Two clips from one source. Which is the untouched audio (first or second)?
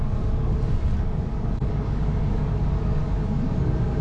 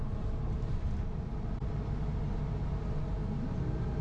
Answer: second